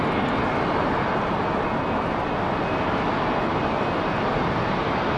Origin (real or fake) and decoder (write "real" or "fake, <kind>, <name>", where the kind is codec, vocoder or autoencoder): real